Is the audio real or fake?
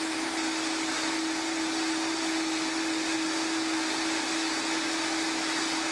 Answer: real